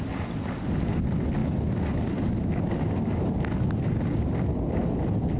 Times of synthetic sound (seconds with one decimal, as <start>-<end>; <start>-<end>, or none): none